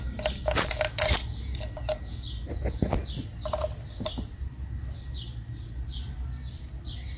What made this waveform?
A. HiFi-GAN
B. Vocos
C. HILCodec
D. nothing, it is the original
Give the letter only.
D